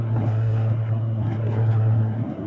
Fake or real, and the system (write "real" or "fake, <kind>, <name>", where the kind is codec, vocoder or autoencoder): fake, codec, SNAC